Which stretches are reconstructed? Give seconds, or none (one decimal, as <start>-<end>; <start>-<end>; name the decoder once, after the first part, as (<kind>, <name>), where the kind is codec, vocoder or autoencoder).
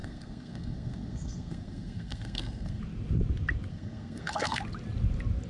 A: 0.0-2.8 (codec, SNAC); 3.7-4.6